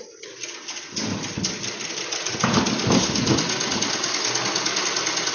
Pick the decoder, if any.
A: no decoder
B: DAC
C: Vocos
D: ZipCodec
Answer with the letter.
A